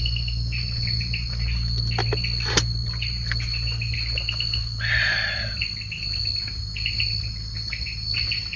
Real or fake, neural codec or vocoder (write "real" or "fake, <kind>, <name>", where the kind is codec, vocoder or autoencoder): real